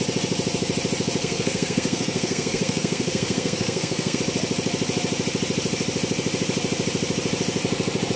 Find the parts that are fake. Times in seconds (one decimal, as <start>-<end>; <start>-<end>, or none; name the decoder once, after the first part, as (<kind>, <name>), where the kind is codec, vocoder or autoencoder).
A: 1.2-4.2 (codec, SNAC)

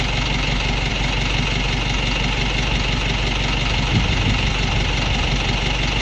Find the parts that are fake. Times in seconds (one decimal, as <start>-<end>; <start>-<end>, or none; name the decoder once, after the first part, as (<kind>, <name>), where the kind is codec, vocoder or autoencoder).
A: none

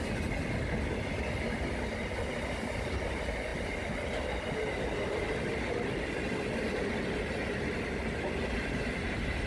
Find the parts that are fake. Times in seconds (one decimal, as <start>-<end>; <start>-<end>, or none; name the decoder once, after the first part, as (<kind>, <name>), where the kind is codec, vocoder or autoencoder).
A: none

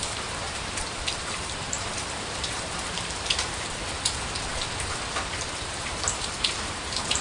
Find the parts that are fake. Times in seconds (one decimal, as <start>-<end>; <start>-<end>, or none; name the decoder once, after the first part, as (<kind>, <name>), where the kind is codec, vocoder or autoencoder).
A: 0.0-3.8 (vocoder, BigVGAN v2); 5.4-7.2

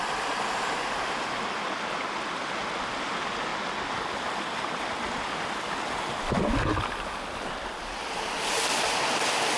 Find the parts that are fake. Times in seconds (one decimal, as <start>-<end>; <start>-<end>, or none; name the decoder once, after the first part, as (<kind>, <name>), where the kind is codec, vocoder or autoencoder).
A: none

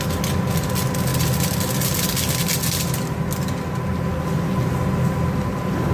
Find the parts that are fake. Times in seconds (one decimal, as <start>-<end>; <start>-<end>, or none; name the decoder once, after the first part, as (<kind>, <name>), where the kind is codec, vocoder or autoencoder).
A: none

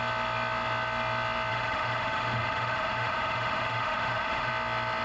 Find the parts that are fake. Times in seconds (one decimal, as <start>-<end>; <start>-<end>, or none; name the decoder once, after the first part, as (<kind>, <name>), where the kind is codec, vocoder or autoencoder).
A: 1.5-4.5 (autoencoder, DAC-VAE)

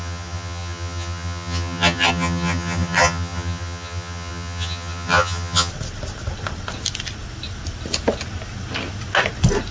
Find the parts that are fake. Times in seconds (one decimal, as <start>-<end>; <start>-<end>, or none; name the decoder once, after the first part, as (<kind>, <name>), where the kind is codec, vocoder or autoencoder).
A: 0.0-5.7 (vocoder, HiFi-GAN)